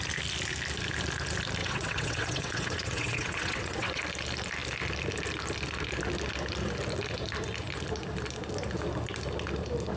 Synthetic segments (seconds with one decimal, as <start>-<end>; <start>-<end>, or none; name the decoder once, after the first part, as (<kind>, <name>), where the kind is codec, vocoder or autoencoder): 1.6-4.0 (vocoder, WaveNeXt)